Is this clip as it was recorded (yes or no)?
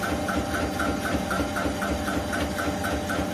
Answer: yes